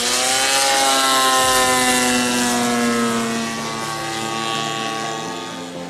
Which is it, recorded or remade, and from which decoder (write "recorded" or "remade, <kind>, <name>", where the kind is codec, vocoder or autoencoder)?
recorded